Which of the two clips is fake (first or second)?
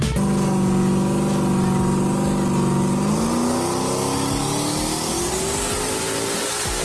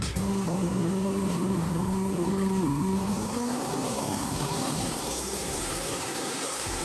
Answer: second